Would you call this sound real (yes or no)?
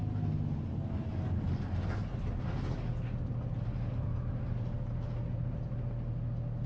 yes